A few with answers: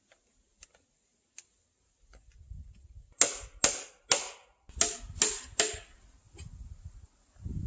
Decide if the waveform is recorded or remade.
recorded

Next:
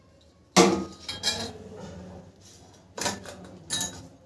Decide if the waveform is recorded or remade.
recorded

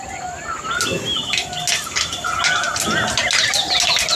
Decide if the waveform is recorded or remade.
recorded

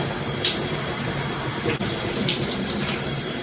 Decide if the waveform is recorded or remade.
remade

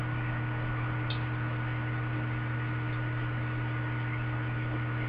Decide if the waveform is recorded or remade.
recorded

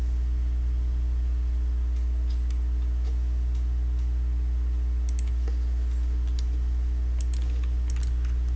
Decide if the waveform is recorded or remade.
remade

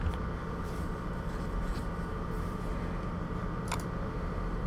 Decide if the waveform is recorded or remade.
recorded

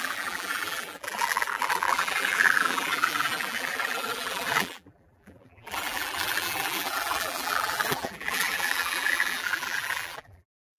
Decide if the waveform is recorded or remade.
remade